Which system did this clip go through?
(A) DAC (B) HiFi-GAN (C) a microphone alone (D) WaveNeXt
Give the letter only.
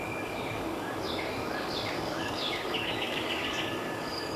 A